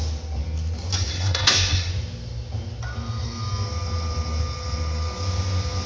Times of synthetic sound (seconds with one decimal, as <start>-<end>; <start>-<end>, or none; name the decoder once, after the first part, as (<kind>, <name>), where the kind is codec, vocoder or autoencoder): 1.1-1.9 (codec, SNAC)

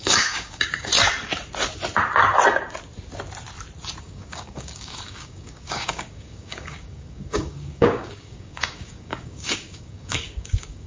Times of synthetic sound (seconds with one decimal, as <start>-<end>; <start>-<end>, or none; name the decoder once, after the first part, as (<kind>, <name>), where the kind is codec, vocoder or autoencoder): 0.0-0.9 (codec, DAC); 4.0-10.9